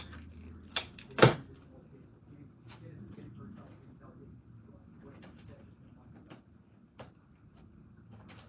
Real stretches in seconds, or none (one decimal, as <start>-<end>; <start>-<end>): 0.0-8.5